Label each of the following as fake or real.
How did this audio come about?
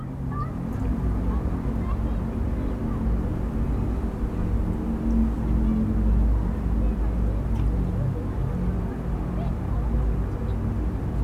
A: real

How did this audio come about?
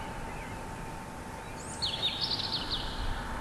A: real